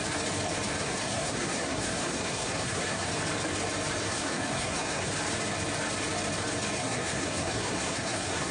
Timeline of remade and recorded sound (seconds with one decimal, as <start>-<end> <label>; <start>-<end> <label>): 0.0-0.8 recorded; 0.8-3.1 remade; 3.1-4.0 recorded; 4.0-5.1 remade; 5.1-6.8 recorded; 6.8-8.5 remade